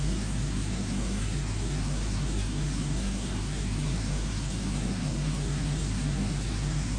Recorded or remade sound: remade